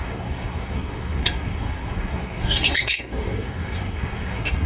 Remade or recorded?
remade